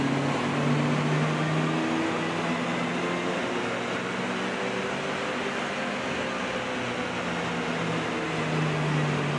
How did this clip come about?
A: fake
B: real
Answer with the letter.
B